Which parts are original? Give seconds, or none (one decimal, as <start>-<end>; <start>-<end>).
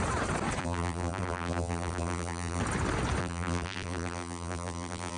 0.0-0.6; 2.6-3.2